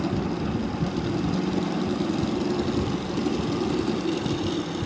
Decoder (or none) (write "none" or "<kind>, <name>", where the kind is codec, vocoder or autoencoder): none